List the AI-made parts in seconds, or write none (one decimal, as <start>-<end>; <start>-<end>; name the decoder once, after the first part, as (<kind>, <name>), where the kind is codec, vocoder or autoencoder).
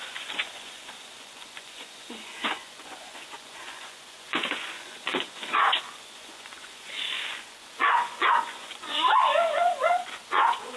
0.0-10.8 (vocoder, Vocos)